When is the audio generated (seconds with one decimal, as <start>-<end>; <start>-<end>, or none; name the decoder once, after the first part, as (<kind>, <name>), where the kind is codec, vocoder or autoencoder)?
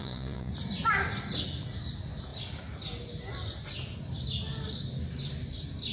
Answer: 0.0-0.5 (vocoder, Vocos)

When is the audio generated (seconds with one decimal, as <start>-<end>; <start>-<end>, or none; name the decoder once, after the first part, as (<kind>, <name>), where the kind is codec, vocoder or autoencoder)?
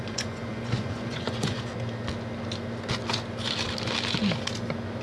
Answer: 0.0-1.7 (vocoder, Vocos)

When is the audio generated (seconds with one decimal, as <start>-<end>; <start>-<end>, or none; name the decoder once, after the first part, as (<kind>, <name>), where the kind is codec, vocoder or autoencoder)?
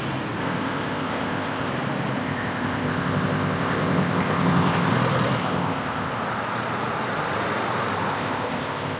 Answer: 0.4-1.7 (codec, ZipCodec); 2.2-4.9; 5.4-6.1; 8.1-9.0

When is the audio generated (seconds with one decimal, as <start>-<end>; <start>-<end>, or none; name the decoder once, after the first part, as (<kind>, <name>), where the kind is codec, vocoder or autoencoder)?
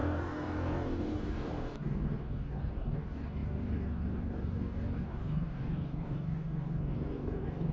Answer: 0.0-7.7 (codec, DAC)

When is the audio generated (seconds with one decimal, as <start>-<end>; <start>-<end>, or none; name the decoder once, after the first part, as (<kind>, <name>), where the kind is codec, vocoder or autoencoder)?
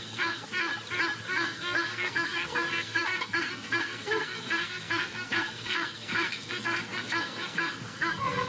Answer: 0.0-0.7 (codec, SNAC); 1.3-8.5